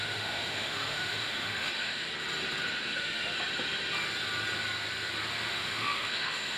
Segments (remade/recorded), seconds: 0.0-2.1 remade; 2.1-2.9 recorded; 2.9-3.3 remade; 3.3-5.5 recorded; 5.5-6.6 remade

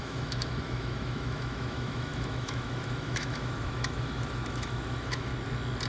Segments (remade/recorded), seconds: 0.0-5.3 remade; 5.3-5.9 recorded

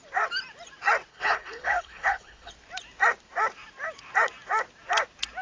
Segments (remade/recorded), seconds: 0.0-1.1 recorded; 1.1-2.5 remade; 2.5-5.4 recorded

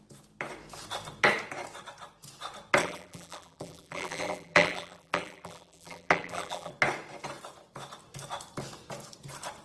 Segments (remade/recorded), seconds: 0.0-2.8 recorded; 2.8-6.7 remade; 6.7-9.6 recorded

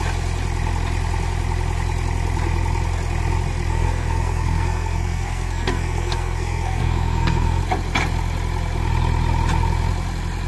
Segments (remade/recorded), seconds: 0.0-3.7 recorded; 3.7-7.6 remade; 7.6-10.5 recorded

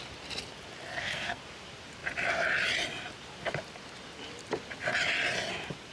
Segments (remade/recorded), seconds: 0.0-0.9 recorded; 0.9-1.4 remade; 1.4-5.9 recorded